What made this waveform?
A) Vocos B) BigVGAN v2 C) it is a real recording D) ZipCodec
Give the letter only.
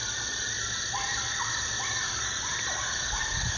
C